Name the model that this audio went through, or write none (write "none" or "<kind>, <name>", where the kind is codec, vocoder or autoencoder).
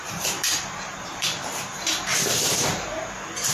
vocoder, BigVGAN v2